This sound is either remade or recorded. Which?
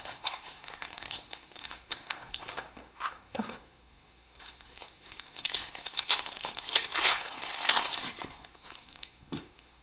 remade